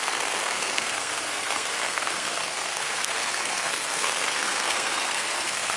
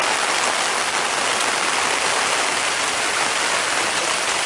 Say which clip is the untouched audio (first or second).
second